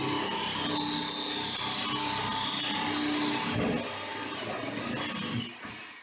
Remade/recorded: recorded